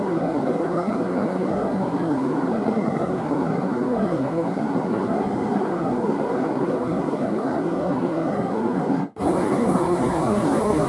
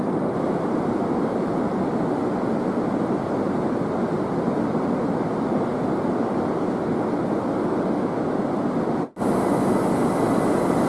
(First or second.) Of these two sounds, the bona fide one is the second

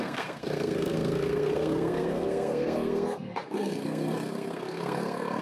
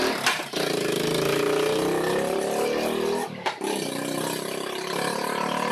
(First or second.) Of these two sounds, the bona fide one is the second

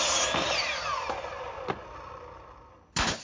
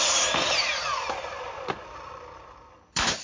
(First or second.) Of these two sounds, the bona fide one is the first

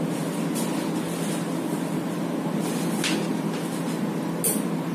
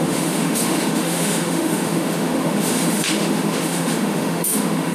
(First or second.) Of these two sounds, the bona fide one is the first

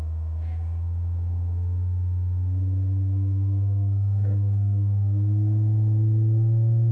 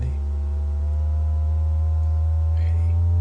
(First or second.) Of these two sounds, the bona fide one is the second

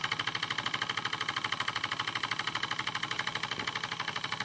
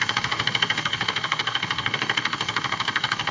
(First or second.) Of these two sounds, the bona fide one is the first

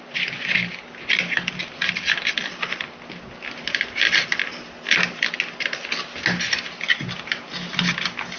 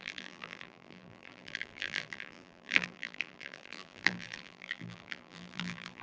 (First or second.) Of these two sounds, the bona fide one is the first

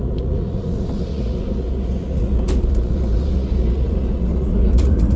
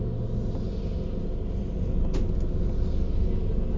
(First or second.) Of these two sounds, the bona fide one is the second